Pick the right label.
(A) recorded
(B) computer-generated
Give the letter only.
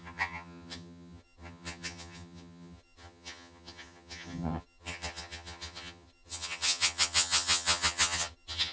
B